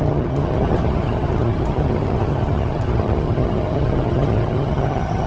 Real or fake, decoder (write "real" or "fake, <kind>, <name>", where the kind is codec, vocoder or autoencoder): fake, vocoder, HiFi-GAN